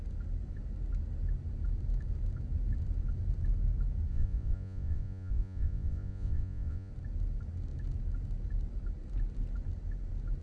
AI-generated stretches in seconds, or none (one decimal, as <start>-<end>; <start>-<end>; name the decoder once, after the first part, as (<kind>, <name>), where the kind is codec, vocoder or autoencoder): 4.1-6.9 (vocoder, Vocos)